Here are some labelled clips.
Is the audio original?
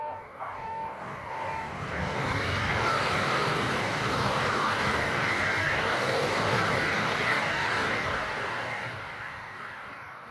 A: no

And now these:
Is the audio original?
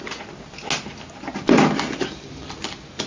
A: yes